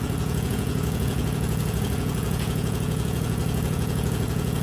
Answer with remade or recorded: remade